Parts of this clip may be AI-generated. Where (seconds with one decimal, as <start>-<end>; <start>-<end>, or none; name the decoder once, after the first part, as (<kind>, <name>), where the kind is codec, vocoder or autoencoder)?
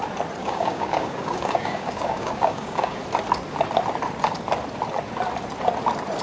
0.4-3.0 (codec, DAC)